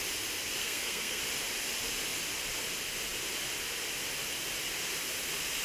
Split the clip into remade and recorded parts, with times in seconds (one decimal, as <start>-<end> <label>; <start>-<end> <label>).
0.0-0.6 recorded; 0.6-1.2 remade; 1.2-5.6 recorded